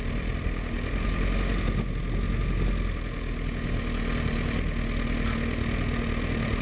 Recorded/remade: recorded